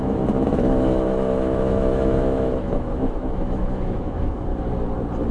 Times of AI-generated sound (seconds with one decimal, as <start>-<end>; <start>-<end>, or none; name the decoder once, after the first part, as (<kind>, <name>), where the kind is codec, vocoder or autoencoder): 0.0-4.5 (autoencoder, DAC-VAE)